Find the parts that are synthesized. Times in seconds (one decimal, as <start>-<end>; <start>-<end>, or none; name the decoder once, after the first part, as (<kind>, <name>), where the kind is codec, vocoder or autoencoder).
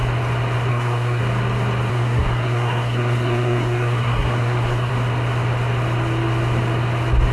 0.7-1.2 (codec, SNAC); 1.9-4.9